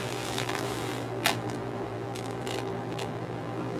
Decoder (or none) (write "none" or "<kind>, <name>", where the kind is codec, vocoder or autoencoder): vocoder, BigVGAN v2